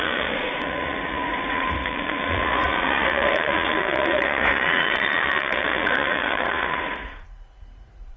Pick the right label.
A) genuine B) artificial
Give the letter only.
B